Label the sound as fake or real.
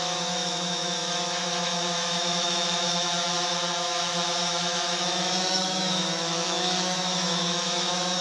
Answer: fake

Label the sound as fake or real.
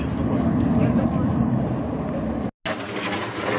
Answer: real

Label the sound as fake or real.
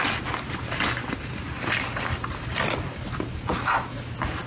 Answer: real